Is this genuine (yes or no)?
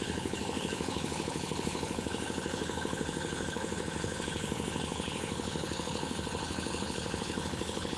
no